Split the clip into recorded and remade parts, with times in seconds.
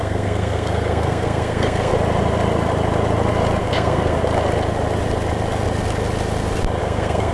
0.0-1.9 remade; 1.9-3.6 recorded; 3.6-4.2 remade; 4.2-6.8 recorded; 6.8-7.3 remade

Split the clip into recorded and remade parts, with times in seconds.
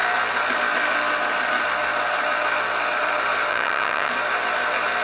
0.0-3.5 recorded; 3.5-4.1 remade; 4.1-5.0 recorded